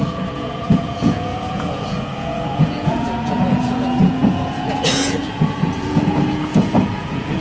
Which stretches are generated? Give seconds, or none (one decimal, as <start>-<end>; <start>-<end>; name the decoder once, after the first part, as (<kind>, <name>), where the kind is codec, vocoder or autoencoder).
0.0-7.4 (vocoder, Vocos)